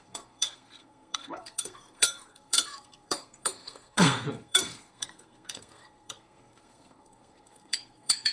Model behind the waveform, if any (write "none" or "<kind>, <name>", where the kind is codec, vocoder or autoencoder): codec, SNAC